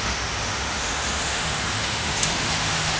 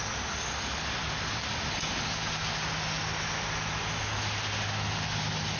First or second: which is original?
second